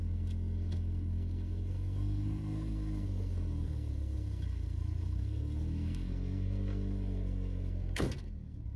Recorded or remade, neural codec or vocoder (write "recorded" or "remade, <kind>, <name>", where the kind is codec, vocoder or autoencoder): remade, codec, SNAC